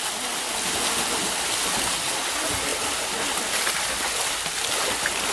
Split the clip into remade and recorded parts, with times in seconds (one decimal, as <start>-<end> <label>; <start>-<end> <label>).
0.0-5.3 recorded